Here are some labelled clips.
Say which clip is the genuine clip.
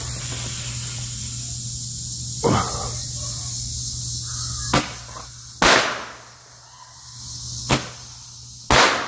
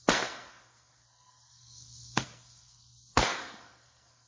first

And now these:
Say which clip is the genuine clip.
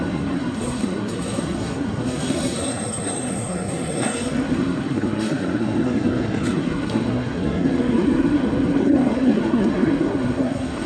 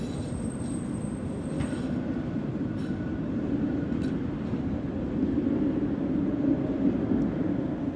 second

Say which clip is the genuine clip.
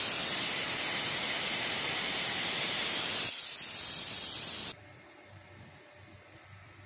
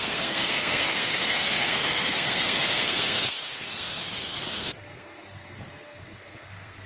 first